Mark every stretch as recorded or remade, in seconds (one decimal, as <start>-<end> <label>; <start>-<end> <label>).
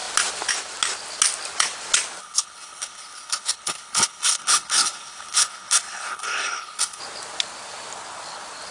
0.0-2.2 recorded; 2.2-7.0 remade; 7.0-8.7 recorded